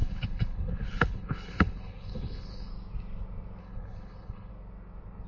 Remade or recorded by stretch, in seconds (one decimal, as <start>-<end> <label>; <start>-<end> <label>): 0.0-2.7 remade; 2.7-3.6 recorded; 3.6-4.5 remade; 4.5-5.3 recorded